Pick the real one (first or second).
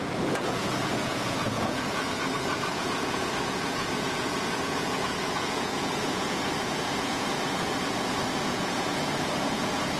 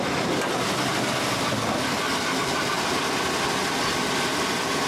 second